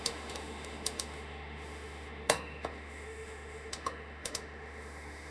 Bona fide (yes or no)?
no